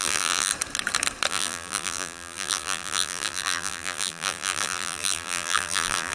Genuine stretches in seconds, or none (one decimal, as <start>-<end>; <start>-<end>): 0.5-1.3